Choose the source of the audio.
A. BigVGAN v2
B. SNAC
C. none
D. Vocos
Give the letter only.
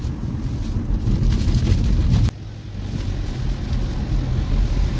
C